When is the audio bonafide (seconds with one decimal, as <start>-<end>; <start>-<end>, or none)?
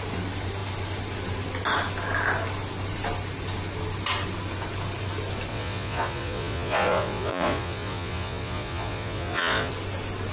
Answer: 0.0-5.5; 9.7-10.3